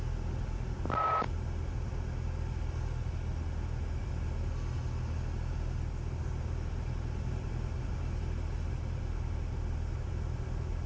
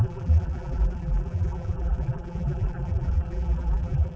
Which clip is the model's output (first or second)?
second